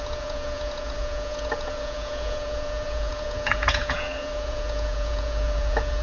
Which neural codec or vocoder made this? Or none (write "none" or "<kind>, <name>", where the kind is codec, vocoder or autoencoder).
vocoder, Vocos